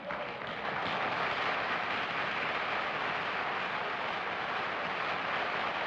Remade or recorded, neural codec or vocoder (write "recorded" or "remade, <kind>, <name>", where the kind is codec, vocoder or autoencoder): recorded